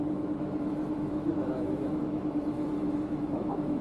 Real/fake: fake